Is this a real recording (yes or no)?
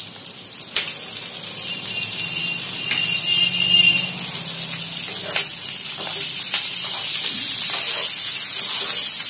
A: yes